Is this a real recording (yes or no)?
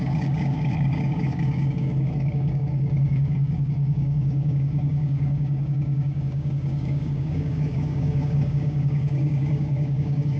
no